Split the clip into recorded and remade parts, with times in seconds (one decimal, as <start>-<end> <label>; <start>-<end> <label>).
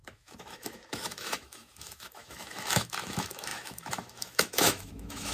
0.0-5.3 remade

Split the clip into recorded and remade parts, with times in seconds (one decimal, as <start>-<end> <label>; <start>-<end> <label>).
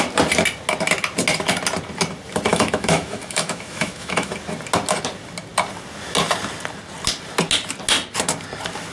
0.0-2.5 recorded; 2.5-4.3 remade; 4.3-8.9 recorded